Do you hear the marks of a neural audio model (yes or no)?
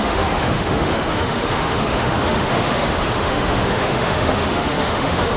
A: yes